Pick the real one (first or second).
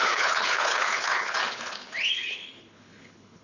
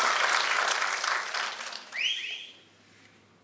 second